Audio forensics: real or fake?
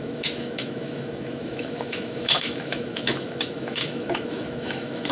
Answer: fake